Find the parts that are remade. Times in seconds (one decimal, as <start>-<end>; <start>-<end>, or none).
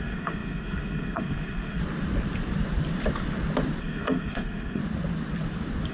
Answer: 0.0-1.8; 3.8-4.8